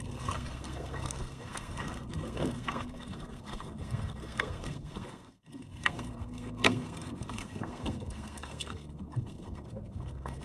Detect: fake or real fake